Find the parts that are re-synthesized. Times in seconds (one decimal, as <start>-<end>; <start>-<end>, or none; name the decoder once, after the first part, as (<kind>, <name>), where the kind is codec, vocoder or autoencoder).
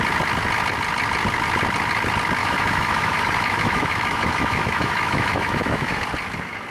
2.4-6.0 (autoencoder, DAC-VAE)